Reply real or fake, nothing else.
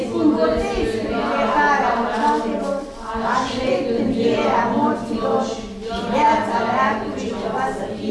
real